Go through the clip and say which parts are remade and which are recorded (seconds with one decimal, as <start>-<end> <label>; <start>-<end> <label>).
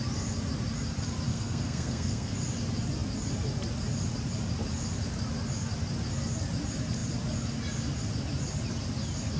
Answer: 0.0-1.3 recorded; 1.3-2.3 remade; 2.3-9.4 recorded